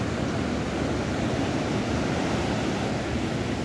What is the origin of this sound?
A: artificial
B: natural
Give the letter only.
B